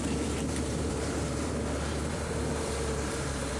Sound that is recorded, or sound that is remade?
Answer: remade